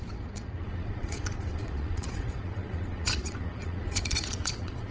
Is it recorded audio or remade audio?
remade